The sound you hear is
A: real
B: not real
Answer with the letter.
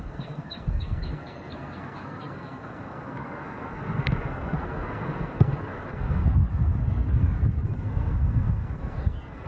B